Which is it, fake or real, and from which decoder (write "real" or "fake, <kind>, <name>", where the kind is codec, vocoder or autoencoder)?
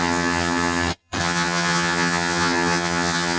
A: fake, vocoder, HiFi-GAN